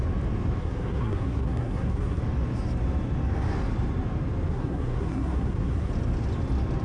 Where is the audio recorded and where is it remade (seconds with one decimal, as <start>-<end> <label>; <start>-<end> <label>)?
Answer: 0.0-0.6 recorded; 0.6-2.2 remade; 2.2-4.5 recorded; 4.5-5.9 remade; 5.9-6.8 recorded